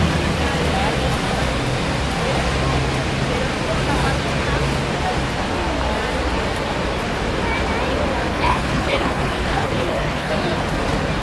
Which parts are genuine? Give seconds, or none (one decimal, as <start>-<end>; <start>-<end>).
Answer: 0.0-8.3; 10.3-11.2